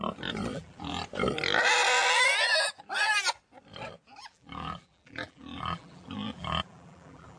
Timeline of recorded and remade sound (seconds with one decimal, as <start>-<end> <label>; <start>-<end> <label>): 0.0-0.5 recorded; 0.5-1.0 remade; 1.0-4.2 recorded; 4.2-7.4 remade